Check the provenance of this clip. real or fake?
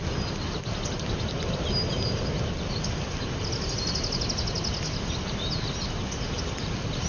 real